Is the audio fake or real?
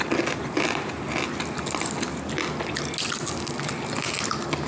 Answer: real